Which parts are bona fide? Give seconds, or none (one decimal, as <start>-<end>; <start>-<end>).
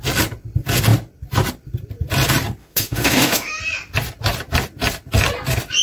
0.0-2.6; 3.6-5.8